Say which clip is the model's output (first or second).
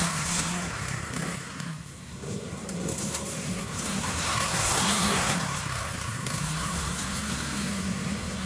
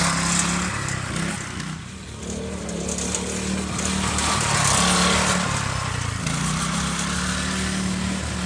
first